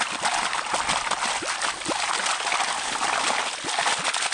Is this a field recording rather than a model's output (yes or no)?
yes